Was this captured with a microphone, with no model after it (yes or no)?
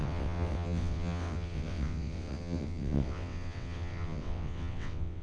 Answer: no